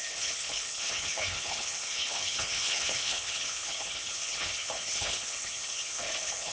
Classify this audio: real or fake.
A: fake